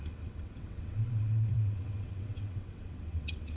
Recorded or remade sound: remade